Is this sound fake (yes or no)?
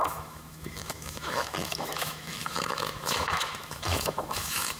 yes